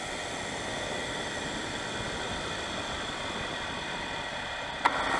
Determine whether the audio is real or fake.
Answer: real